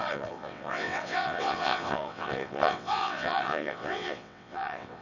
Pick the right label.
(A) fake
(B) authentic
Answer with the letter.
A